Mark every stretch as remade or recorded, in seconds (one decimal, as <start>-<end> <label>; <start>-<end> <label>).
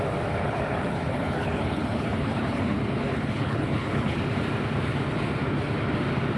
0.0-0.4 recorded; 0.4-4.2 remade; 4.2-6.4 recorded